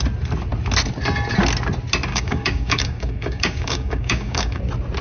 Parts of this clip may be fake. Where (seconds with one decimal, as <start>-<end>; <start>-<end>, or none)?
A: 2.1-4.6

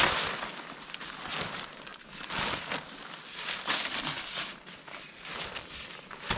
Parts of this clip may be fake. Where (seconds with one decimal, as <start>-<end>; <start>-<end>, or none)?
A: none

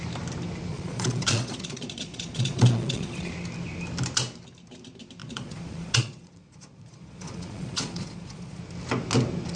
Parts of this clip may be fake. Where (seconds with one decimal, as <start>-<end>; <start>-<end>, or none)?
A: 0.7-3.3; 5.2-8.6

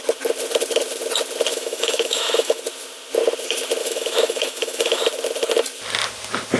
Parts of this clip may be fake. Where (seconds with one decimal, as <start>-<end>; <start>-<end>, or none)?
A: 1.5-2.6; 3.8-5.0

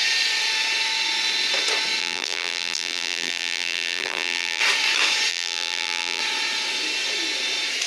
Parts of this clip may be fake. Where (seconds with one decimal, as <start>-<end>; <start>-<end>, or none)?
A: 2.0-4.6; 5.3-6.2

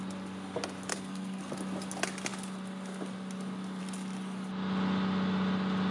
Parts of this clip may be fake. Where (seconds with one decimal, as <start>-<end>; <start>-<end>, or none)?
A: 0.9-1.5